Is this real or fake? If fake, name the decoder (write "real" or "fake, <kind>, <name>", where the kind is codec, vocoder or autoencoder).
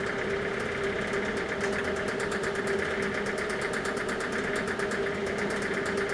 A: real